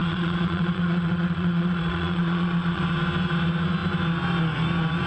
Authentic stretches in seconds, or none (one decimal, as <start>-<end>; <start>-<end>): 2.8-5.1